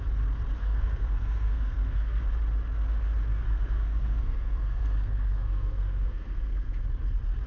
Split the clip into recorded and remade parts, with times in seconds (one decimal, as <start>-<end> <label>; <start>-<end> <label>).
0.0-0.6 recorded; 0.6-2.2 remade; 2.2-3.3 recorded; 3.3-6.8 remade; 6.8-7.5 recorded